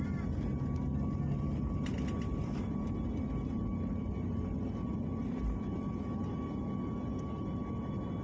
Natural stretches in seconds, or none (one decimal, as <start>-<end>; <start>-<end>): 0.0-8.2

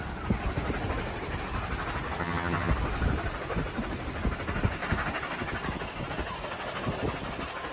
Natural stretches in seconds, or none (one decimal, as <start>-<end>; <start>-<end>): 0.0-2.2; 2.7-7.7

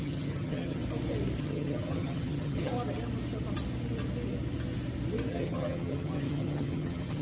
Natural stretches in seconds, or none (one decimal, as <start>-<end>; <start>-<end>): 0.8-1.4; 2.7-5.3

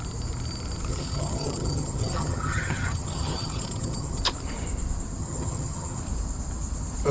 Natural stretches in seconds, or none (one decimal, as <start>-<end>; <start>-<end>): 0.0-0.9; 4.2-5.2; 6.0-7.1

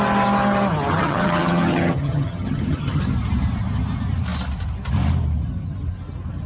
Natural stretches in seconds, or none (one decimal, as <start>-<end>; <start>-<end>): 0.0-1.0; 3.0-6.5

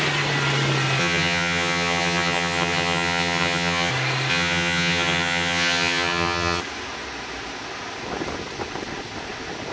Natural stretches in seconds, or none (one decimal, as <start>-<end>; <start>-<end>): 0.0-1.0; 3.9-4.3; 6.6-9.7

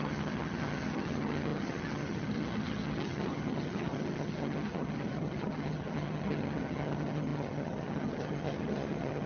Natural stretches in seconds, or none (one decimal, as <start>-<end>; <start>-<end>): none